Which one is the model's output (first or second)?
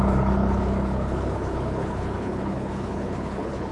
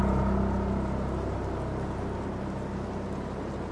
first